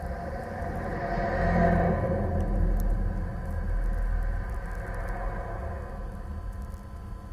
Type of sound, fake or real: real